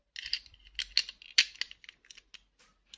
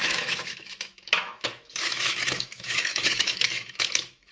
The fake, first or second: second